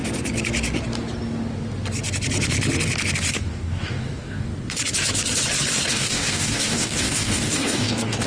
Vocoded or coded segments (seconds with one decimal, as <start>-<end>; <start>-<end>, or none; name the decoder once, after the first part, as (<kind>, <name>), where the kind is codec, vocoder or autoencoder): 3.3-4.5 (codec, DAC); 5.9-8.3

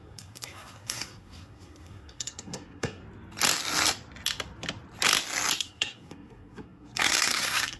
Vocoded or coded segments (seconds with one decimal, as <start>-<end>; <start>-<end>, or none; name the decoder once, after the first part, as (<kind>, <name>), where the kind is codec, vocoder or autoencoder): 0.0-3.0 (codec, SNAC); 5.6-7.8

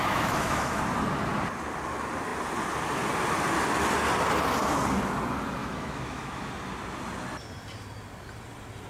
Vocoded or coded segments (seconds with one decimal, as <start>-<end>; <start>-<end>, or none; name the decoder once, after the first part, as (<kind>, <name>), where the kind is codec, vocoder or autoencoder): 0.0-0.8 (autoencoder, DAC-VAE); 5.6-6.5

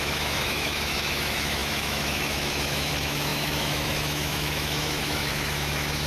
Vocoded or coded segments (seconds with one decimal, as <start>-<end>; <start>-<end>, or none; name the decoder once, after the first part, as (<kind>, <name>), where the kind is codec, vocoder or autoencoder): 0.0-6.1 (autoencoder, DAC-VAE)

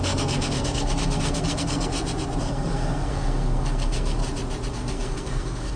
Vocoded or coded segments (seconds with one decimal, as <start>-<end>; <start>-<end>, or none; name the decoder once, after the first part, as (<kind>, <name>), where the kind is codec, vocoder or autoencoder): 0.0-1.9 (codec, SNAC); 2.4-4.2; 4.7-5.8

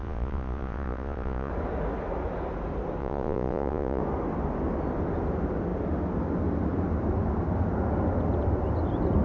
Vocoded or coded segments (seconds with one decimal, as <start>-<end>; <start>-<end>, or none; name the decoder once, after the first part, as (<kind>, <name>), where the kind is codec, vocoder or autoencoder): 0.0-1.5 (vocoder, Vocos); 3.0-4.0

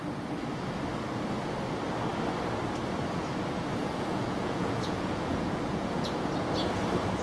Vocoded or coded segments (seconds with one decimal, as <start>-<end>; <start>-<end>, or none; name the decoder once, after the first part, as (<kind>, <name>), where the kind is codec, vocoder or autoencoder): 3.8-6.1 (vocoder, Vocos)